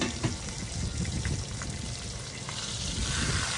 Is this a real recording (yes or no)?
no